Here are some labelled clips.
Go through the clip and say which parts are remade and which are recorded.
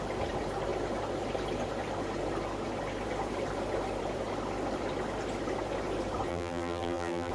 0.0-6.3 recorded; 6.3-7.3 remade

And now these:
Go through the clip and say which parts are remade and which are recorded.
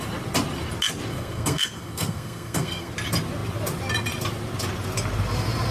0.0-1.1 recorded; 1.1-2.9 remade; 2.9-5.7 recorded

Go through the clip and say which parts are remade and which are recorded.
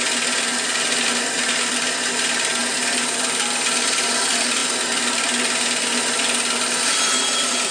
0.0-2.6 recorded; 2.6-3.3 remade; 3.3-7.7 recorded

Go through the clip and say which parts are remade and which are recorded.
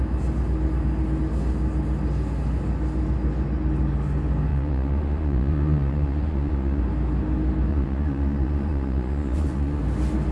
0.0-4.5 recorded; 4.5-6.8 remade; 6.8-7.7 recorded; 7.7-9.8 remade; 9.8-10.3 recorded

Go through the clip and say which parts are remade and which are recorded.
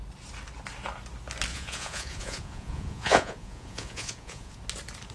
0.0-1.5 recorded; 1.5-4.6 remade; 4.6-5.1 recorded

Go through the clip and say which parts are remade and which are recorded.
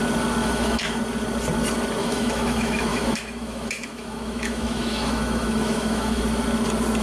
0.0-0.4 recorded; 0.4-1.0 remade; 1.0-2.0 recorded; 2.0-6.2 remade; 6.2-7.0 recorded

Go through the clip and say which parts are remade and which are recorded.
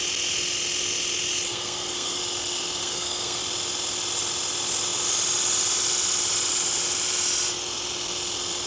0.0-1.5 recorded; 1.5-2.2 remade; 2.2-2.8 recorded; 2.8-3.4 remade; 3.4-8.7 recorded